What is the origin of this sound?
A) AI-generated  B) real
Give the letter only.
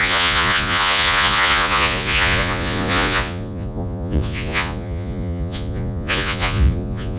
A